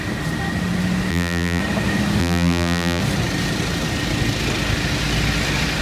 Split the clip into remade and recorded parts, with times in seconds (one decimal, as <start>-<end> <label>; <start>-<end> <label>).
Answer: 0.0-1.1 recorded; 1.1-1.6 remade; 1.6-2.2 recorded; 2.2-3.0 remade; 3.0-5.8 recorded